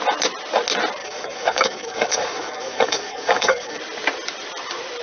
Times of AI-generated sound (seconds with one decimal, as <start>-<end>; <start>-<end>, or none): 1.0-3.8